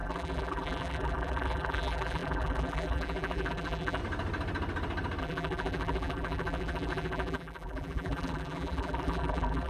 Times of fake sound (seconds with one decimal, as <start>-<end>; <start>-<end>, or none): 0.0-4.0; 5.2-9.7